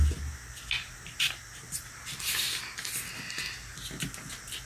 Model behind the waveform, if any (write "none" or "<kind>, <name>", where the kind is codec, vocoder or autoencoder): none